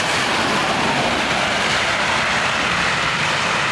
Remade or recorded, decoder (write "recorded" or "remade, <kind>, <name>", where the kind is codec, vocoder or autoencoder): remade, vocoder, BigVGAN v2